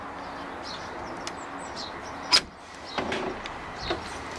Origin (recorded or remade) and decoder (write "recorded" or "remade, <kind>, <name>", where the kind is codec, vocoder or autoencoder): recorded